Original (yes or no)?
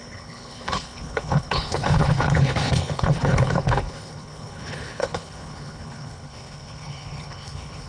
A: no